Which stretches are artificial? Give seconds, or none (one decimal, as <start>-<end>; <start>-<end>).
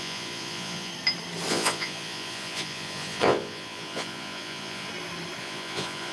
0.0-0.9; 1.5-4.9; 5.4-6.1